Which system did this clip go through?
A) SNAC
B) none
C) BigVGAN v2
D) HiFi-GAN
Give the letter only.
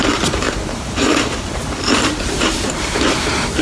C